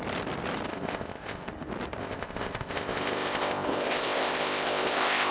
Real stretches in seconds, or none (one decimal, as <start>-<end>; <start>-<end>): 0.0-0.7; 1.5-2.0